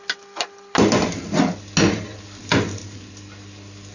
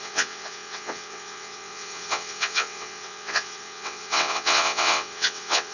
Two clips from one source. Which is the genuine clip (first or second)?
first